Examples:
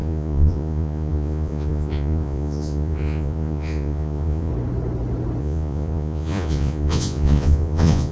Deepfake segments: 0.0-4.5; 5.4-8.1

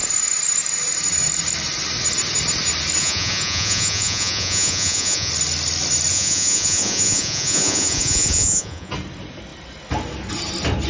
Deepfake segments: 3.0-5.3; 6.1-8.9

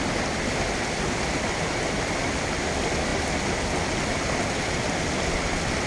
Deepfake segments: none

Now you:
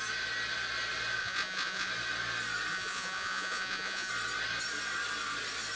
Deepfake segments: 1.2-1.9; 2.7-4.1